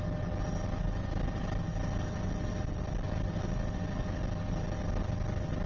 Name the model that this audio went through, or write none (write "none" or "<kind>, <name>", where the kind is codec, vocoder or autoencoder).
none